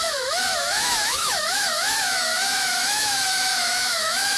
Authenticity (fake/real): fake